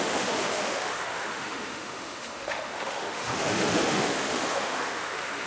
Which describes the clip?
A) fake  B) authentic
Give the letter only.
A